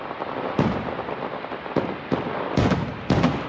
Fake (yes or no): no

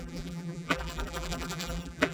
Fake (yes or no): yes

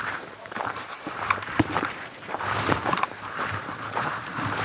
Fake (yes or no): yes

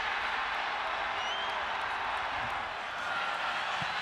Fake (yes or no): no